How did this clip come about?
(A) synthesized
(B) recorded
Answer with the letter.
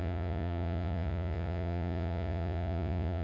A